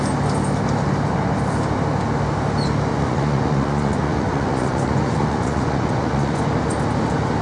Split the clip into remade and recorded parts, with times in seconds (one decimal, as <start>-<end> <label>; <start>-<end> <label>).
0.0-2.9 recorded; 2.9-6.4 remade; 6.4-7.4 recorded